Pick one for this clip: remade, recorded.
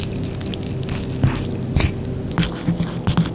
recorded